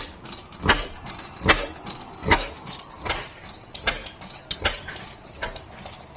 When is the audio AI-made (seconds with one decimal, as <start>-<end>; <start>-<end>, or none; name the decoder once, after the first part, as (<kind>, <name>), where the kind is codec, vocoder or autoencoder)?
2.2-2.8 (autoencoder, DAC-VAE)